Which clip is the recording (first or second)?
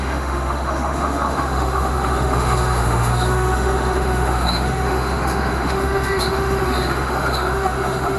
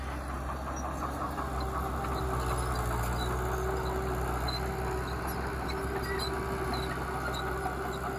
second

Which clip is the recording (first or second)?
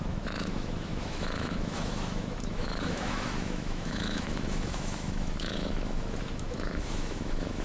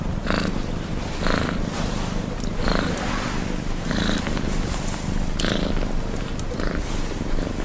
second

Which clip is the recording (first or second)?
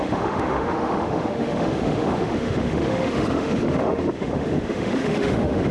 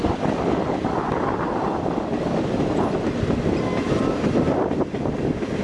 second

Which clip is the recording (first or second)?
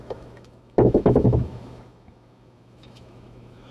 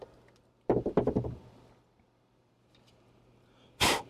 second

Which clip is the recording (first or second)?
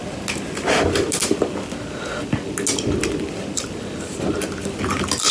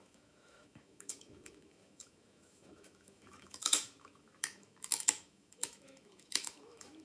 first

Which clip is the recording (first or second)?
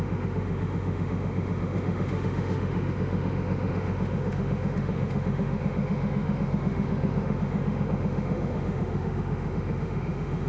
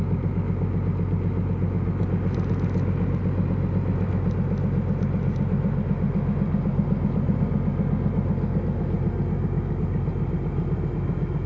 second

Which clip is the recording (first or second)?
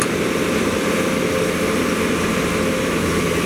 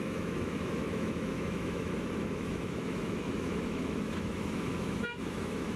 first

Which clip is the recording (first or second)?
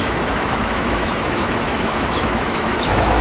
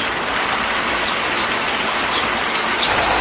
second